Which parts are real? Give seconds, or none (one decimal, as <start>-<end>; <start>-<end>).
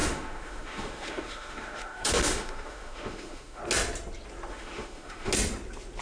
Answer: 3.6-4.5; 5.3-6.0